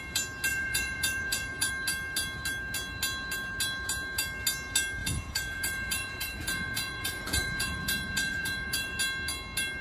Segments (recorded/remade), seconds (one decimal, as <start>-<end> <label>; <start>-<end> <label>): 0.0-0.5 recorded; 0.5-1.7 remade; 1.7-5.0 recorded; 5.0-9.0 remade; 9.0-9.8 recorded